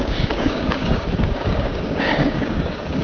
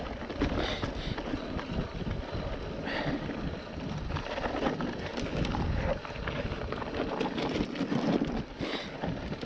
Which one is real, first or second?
second